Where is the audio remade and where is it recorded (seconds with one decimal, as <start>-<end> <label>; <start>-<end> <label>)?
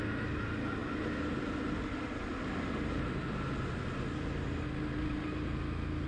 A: 0.0-6.1 recorded